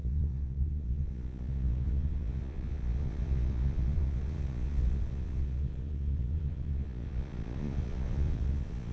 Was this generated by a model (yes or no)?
yes